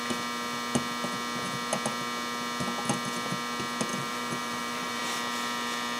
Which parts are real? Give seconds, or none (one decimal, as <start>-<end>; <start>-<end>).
0.0-3.9; 5.0-6.0